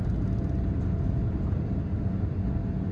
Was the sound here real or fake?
real